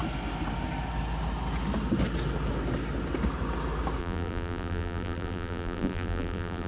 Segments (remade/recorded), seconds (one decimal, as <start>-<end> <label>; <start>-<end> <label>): 0.0-4.0 recorded; 4.0-6.7 remade